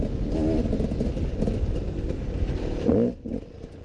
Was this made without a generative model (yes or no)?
yes